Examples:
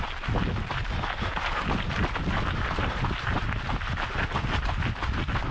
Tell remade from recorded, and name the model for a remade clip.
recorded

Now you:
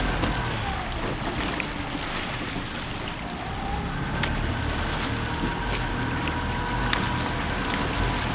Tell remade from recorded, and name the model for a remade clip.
recorded